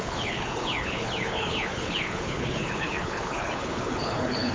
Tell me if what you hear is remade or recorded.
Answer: remade